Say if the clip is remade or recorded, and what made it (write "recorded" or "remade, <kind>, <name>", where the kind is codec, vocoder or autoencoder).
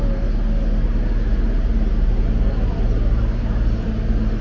recorded